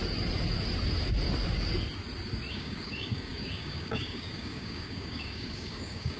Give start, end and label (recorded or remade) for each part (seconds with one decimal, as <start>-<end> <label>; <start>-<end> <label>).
0.0-2.5 recorded; 2.5-6.2 remade